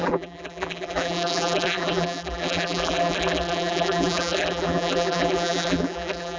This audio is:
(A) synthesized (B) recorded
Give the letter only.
A